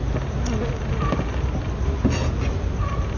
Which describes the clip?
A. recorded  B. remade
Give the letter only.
A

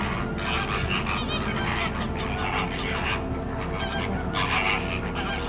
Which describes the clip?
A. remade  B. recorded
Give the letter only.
B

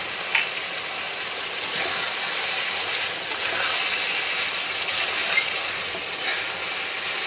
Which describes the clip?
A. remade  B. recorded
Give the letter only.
B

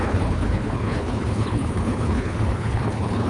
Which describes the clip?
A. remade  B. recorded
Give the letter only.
A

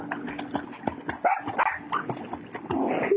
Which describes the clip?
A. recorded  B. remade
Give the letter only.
A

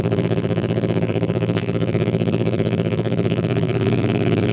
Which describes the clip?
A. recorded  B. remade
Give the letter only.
B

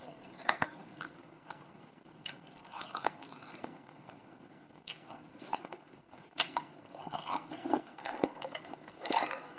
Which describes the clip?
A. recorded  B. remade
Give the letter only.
B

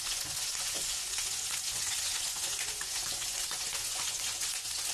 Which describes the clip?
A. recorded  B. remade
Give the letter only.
B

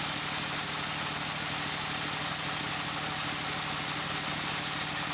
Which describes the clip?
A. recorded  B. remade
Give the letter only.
A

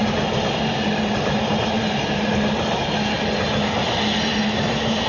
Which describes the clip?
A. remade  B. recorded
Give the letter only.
B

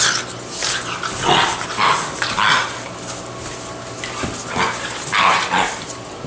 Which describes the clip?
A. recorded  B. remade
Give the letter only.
A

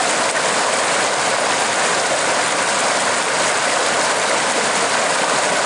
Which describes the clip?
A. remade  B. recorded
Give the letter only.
B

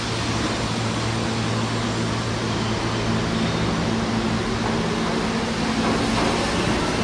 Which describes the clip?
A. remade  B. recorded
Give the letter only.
B